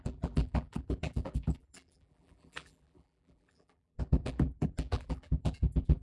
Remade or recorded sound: remade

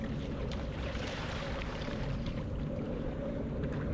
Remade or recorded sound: remade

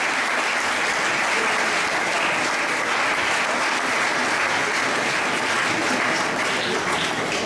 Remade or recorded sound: recorded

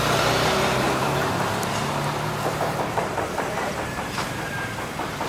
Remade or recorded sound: remade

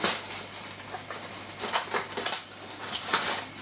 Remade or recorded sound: recorded